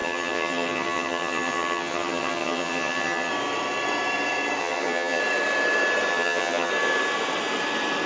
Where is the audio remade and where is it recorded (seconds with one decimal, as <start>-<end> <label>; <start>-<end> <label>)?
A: 0.0-3.3 remade; 3.3-4.6 recorded; 4.6-5.2 remade; 5.2-6.1 recorded; 6.1-6.7 remade; 6.7-8.1 recorded